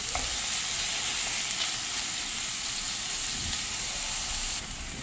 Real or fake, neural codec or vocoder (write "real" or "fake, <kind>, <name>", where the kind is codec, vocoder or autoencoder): real